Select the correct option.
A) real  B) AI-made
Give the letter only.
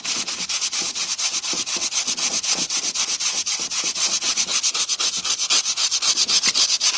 A